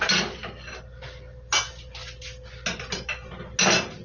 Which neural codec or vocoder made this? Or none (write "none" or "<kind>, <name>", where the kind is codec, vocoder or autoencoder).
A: none